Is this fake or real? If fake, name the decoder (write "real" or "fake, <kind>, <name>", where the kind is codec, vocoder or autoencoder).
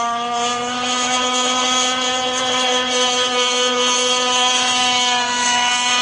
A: fake, autoencoder, DAC-VAE